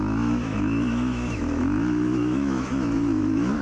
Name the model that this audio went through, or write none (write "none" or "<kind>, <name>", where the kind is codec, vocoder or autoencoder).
autoencoder, DAC-VAE